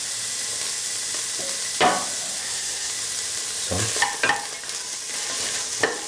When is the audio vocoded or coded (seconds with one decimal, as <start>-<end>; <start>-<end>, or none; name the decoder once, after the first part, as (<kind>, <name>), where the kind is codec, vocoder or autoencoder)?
2.4-2.9 (codec, SNAC)